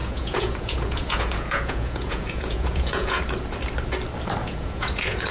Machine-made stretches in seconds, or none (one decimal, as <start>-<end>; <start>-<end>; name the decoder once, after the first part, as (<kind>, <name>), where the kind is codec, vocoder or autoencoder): 0.0-3.2 (vocoder, Vocos); 4.4-5.3